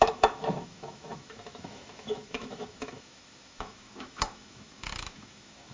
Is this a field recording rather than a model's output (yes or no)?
no